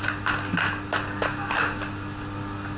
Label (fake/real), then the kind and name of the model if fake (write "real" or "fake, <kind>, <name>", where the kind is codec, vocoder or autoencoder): real